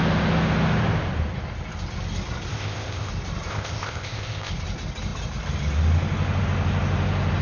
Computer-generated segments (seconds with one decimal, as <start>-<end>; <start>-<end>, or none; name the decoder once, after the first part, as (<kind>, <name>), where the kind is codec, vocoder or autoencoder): 2.5-3.1 (codec, ZipCodec); 3.5-4.5